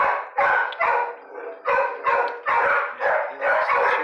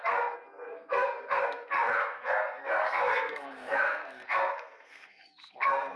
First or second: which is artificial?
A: second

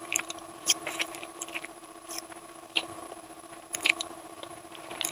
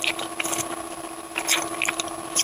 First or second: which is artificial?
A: first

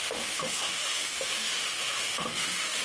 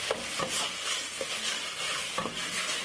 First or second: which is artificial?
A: first